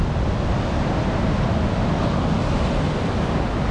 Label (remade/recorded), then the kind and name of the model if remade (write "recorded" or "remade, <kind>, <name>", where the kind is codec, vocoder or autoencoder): recorded